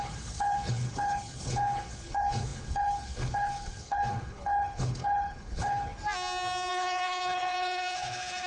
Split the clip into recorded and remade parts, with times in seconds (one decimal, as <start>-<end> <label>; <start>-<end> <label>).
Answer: 0.0-5.9 remade; 5.9-6.7 recorded; 6.7-8.5 remade